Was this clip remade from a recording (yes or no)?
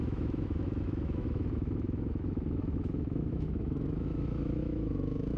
yes